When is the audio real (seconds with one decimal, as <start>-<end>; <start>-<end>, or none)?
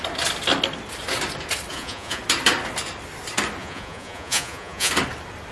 0.0-1.7; 2.2-3.6; 4.9-5.5